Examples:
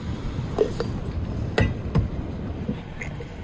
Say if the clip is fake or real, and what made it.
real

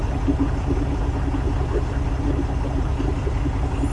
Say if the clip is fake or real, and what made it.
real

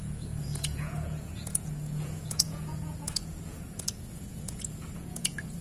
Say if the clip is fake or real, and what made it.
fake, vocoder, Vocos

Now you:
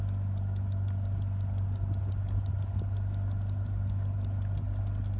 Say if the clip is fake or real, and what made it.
real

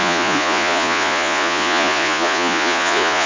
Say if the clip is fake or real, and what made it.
fake, vocoder, Vocos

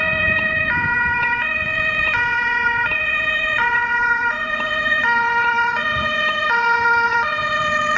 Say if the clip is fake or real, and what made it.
fake, vocoder, Vocos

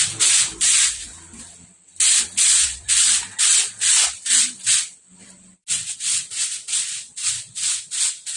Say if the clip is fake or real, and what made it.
real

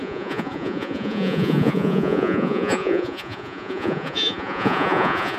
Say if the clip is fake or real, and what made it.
fake, vocoder, Vocos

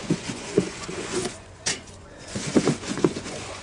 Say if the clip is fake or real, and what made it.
fake, vocoder, Vocos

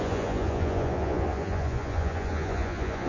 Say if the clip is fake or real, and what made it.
fake, vocoder, Vocos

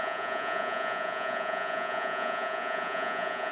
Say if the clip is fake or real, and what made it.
fake, vocoder, Vocos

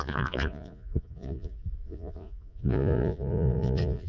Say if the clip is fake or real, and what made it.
fake, vocoder, Vocos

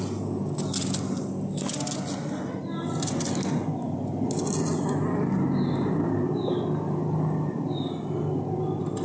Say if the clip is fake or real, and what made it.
real